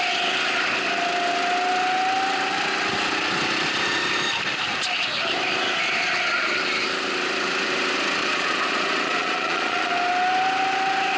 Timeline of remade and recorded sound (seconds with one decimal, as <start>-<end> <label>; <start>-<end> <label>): 0.0-8.2 recorded; 8.2-9.9 remade; 9.9-11.2 recorded